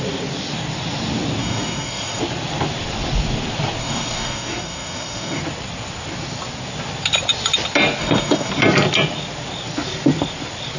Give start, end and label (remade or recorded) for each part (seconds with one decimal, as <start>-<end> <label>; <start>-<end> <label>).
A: 0.0-1.4 recorded; 1.4-2.2 remade; 2.2-3.8 recorded; 3.8-5.4 remade; 5.4-8.0 recorded; 8.0-8.5 remade; 8.5-10.8 recorded